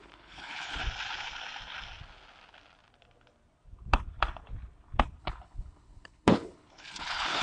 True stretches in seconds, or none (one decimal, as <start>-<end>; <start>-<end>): 0.8-5.2